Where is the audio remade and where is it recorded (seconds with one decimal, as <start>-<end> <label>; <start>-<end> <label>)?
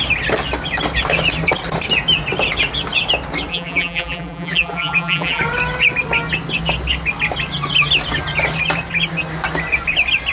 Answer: 0.0-3.5 recorded; 3.5-5.4 remade; 5.4-10.3 recorded